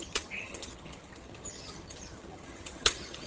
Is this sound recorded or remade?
remade